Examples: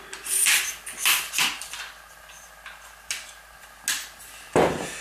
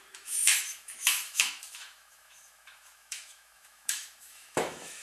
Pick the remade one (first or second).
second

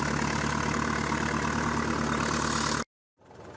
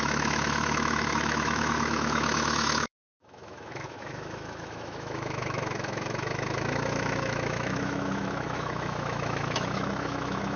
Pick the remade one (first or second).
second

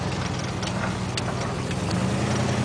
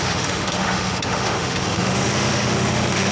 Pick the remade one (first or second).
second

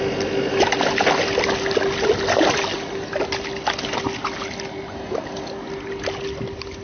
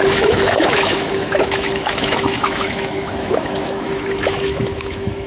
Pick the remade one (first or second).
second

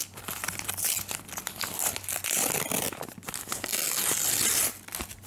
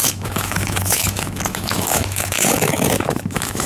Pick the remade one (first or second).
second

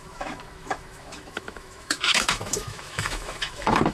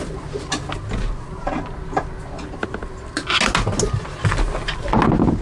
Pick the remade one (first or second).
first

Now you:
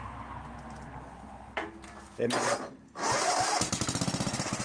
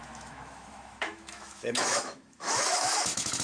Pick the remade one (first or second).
second